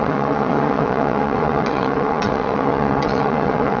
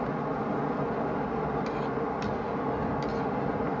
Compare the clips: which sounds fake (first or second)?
first